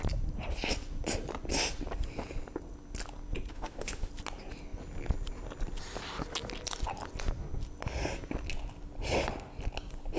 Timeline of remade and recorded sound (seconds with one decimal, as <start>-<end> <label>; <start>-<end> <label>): 0.0-3.5 recorded; 3.5-4.1 remade; 4.1-10.2 recorded